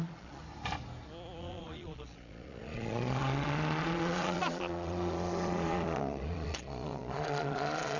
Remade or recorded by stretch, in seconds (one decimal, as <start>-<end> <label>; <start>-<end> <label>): 0.0-0.4 remade; 0.4-1.4 recorded; 1.4-8.0 remade